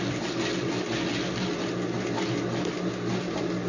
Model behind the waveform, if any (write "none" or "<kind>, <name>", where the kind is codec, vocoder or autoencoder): none